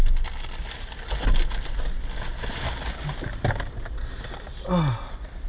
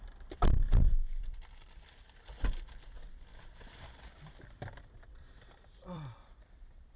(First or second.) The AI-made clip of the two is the second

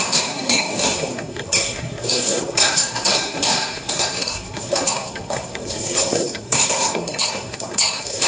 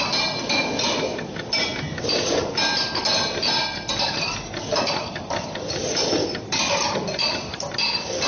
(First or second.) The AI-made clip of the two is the first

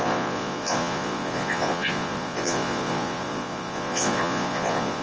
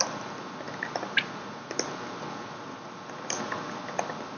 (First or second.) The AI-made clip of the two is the first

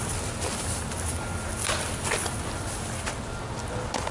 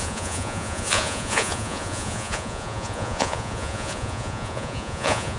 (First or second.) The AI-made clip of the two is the second